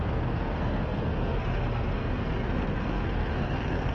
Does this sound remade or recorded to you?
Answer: remade